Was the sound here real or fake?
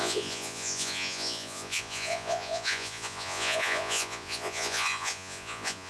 fake